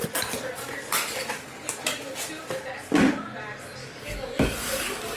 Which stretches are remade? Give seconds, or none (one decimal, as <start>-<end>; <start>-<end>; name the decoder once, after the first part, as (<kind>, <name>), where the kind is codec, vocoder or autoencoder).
3.8-5.2 (codec, DAC)